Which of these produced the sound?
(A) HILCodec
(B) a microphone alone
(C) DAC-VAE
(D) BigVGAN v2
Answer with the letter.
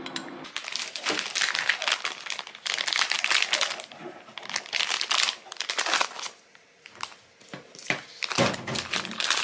B